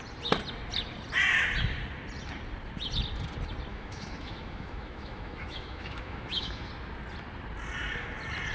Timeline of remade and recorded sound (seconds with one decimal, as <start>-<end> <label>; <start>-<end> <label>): 0.0-3.7 recorded; 3.7-6.7 remade; 6.7-8.5 recorded